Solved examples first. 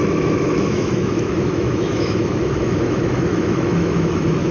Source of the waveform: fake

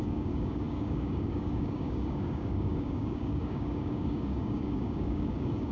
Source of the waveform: fake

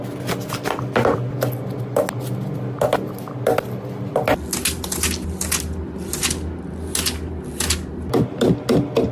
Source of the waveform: real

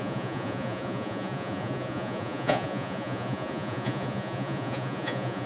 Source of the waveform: fake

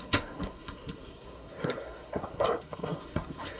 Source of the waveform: fake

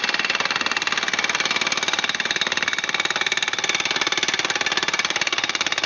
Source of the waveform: real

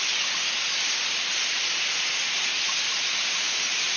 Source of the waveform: real